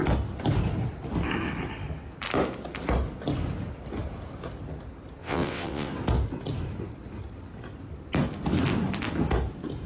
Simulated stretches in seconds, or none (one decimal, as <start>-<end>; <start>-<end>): 5.2-5.9